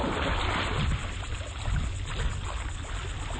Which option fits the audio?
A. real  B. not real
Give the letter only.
A